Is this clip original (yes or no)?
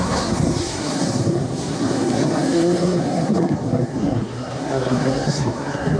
no